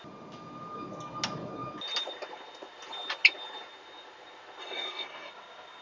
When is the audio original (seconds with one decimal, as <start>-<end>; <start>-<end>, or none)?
0.0-4.6; 5.3-5.8